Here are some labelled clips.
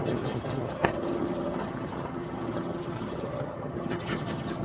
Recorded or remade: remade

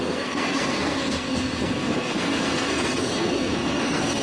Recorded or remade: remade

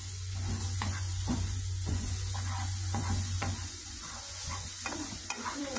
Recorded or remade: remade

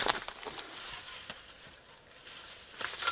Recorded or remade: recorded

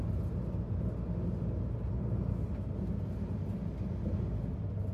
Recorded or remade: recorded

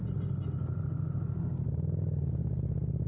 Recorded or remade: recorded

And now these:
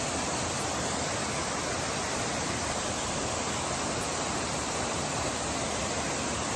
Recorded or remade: remade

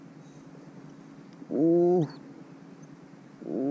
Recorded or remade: recorded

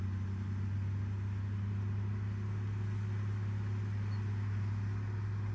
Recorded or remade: recorded